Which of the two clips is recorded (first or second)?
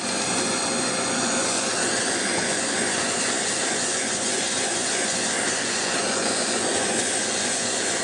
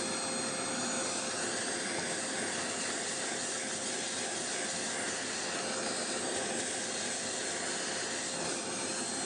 second